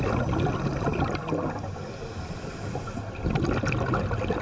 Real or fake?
real